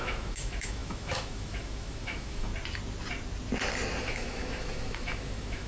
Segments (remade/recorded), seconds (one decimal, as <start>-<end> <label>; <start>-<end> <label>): 0.0-2.5 remade; 2.5-4.0 recorded; 4.0-5.7 remade

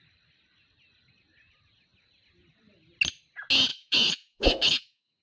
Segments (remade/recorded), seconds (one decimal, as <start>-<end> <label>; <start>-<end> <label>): 0.0-3.7 recorded; 3.7-5.2 remade

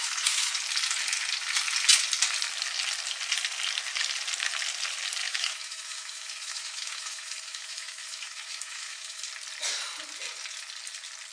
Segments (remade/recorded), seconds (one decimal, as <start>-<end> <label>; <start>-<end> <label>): 0.0-0.6 remade; 0.6-5.2 recorded; 5.2-9.2 remade; 9.2-11.3 recorded

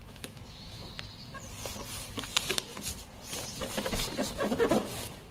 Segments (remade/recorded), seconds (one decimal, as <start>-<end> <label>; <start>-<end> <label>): 0.0-0.9 remade; 0.9-5.3 recorded

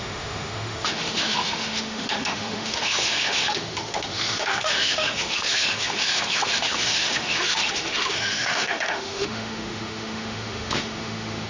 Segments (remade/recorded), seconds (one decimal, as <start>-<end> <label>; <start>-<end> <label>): 0.0-11.5 remade

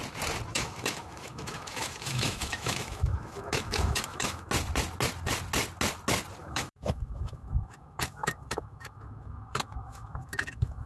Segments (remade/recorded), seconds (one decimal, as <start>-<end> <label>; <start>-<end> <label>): 0.0-0.5 recorded; 0.5-4.5 remade; 4.5-6.4 recorded; 6.4-10.9 remade

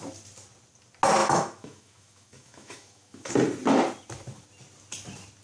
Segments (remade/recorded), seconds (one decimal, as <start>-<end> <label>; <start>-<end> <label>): 0.0-1.2 recorded; 1.2-3.3 remade; 3.3-5.4 recorded

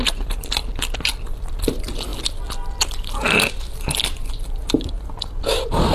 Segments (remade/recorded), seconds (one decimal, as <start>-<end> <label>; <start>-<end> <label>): 0.0-5.9 recorded